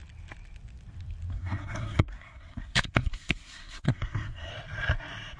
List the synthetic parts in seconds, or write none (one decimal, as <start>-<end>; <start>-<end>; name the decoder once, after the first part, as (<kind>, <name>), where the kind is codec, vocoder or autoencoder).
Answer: 1.3-4.5 (codec, SNAC)